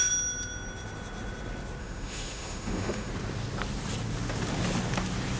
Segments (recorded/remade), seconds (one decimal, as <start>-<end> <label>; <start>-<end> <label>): 0.0-1.8 recorded; 1.8-3.1 remade; 3.1-5.4 recorded